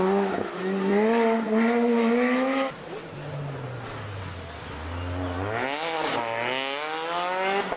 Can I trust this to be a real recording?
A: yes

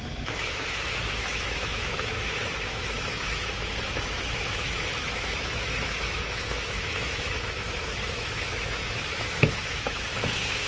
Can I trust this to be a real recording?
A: no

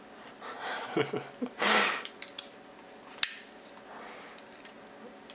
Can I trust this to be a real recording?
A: yes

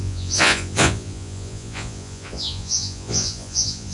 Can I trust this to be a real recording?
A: no